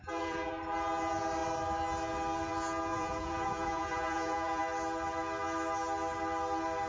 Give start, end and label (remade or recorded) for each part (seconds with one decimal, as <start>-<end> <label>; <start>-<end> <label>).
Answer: 0.0-0.5 remade; 0.5-2.9 recorded; 2.9-4.6 remade; 4.6-6.9 recorded

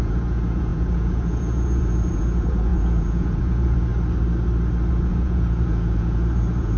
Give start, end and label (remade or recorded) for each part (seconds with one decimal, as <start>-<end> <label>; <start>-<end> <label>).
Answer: 0.0-3.9 remade; 3.9-4.9 recorded; 4.9-6.8 remade

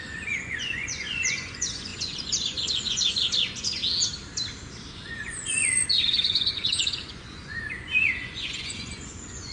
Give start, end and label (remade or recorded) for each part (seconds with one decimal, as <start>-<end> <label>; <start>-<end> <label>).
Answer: 0.0-3.8 remade; 3.8-4.9 recorded; 4.9-9.5 remade

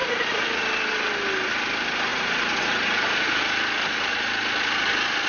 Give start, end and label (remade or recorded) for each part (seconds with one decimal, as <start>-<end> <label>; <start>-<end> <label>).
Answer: 0.0-0.6 remade; 0.6-2.1 recorded; 2.1-3.4 remade; 3.4-5.3 recorded

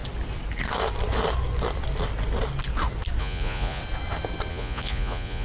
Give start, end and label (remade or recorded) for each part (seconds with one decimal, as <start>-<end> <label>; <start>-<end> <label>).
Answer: 0.0-3.2 recorded; 3.2-3.8 remade; 3.8-4.5 recorded; 4.5-5.4 remade

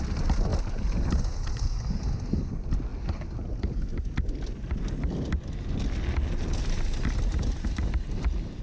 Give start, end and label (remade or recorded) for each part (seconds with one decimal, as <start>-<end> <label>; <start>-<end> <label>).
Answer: 0.0-8.6 recorded